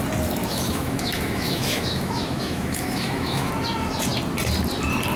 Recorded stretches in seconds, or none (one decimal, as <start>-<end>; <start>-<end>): 0.0-0.4; 3.5-5.2